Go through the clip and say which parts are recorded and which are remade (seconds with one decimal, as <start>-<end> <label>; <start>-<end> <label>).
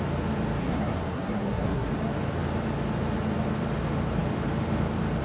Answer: 0.0-0.6 recorded; 0.6-1.9 remade; 1.9-5.2 recorded